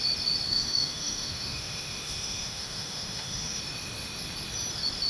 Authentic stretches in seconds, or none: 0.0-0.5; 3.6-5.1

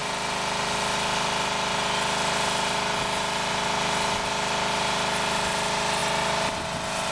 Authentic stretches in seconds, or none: 0.0-7.1